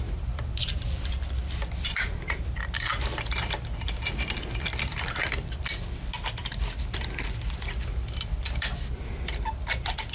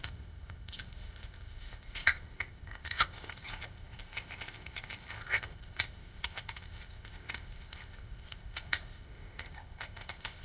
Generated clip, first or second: second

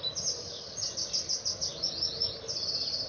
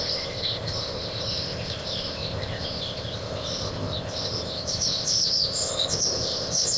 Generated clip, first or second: second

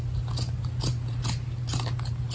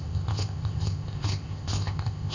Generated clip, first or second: second